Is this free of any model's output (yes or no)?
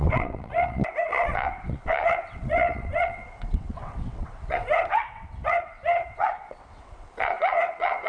no